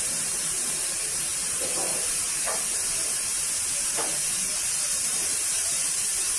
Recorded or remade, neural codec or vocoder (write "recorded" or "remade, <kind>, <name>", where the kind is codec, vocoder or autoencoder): remade, vocoder, BigVGAN v2